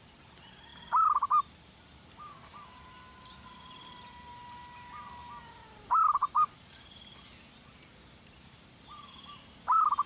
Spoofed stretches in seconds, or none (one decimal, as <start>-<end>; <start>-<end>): none